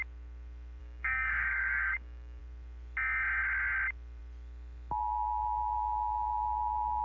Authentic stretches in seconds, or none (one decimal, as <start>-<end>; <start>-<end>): 0.0-0.8; 2.4-7.0